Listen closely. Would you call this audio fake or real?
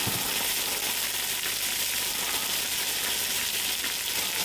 real